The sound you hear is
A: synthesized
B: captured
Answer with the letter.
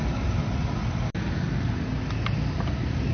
B